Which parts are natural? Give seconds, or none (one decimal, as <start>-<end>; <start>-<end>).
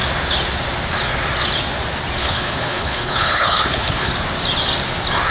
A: 0.0-2.2; 4.1-5.3